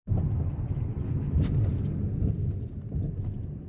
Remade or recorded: recorded